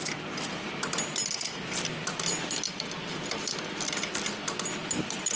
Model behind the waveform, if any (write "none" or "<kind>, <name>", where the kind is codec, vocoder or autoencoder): none